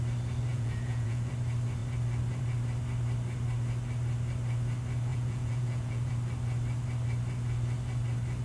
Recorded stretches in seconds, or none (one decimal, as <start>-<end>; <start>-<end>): 0.0-0.5; 1.3-5.1; 6.1-8.4